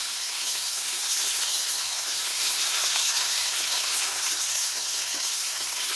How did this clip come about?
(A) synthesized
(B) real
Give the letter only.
A